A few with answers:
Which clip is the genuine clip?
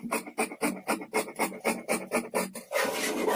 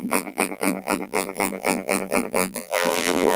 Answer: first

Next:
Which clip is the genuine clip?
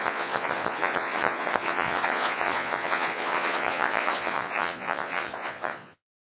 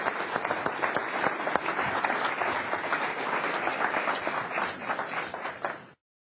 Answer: second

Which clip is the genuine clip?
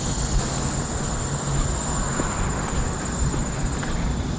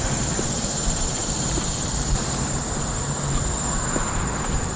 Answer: first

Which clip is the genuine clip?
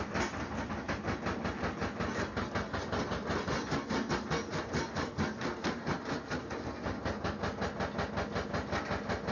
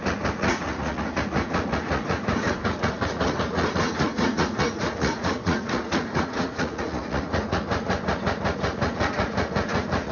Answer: first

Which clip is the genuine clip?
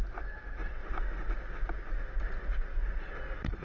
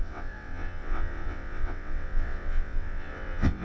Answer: first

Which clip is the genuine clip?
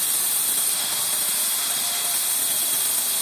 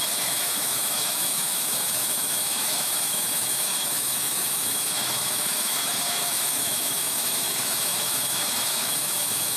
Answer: first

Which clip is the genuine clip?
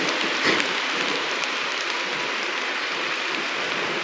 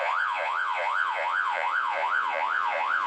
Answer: first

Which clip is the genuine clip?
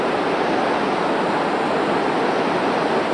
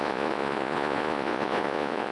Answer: first